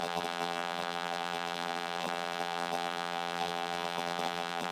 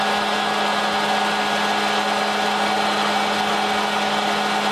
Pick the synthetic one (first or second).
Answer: first